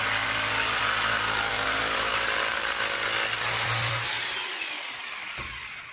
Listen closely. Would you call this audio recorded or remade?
recorded